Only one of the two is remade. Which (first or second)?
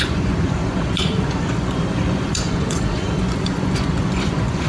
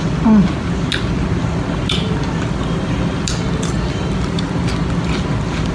first